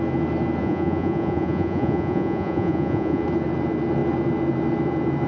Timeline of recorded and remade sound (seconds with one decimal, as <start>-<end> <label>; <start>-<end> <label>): 0.0-0.6 recorded; 0.6-3.2 remade; 3.2-5.3 recorded